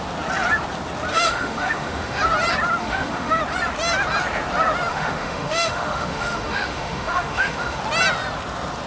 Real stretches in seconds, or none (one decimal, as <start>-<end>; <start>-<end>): 0.0-1.1; 2.2-2.8; 3.4-4.9; 7.8-8.9